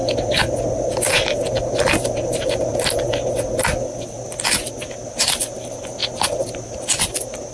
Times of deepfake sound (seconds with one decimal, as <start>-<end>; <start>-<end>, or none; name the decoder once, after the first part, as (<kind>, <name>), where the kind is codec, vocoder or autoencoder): 6.0-7.5 (vocoder, BigVGAN v2)